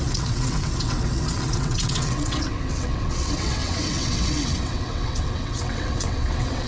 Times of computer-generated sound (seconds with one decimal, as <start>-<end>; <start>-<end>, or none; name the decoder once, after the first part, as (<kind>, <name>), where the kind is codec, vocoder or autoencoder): 0.0-6.7 (vocoder, WaveNeXt)